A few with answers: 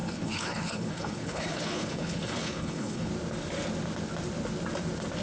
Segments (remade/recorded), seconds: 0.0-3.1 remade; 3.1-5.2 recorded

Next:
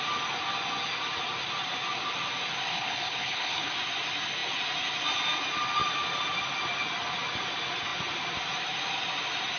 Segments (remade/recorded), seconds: 0.0-2.7 recorded; 2.7-3.7 remade; 3.7-9.6 recorded

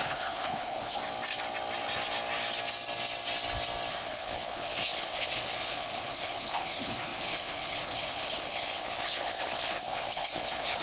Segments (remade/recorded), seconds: 0.0-1.0 remade; 1.0-3.9 recorded; 3.9-10.8 remade

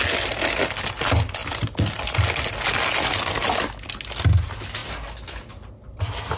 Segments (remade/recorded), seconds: 0.0-6.4 recorded

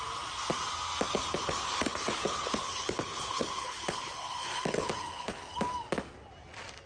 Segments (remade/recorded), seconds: 0.0-1.4 recorded; 1.4-5.5 remade; 5.5-6.9 recorded

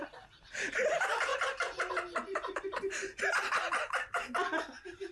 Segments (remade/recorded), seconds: 0.0-5.1 recorded

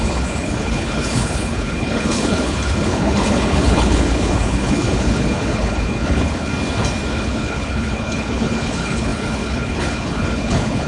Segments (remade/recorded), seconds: 0.0-6.5 remade; 6.5-7.1 recorded; 7.1-10.9 remade